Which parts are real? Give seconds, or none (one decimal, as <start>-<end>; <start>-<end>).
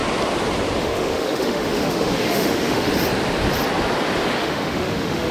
0.0-0.8; 2.9-4.4